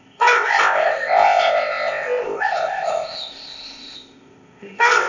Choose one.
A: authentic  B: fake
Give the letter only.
B